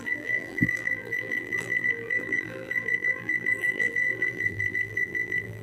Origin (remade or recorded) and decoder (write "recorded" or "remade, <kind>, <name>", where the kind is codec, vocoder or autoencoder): remade, vocoder, BigVGAN v2